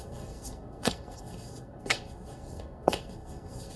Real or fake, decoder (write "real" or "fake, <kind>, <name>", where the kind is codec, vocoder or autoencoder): fake, codec, SNAC